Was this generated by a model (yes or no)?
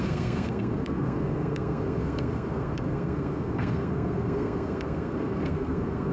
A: yes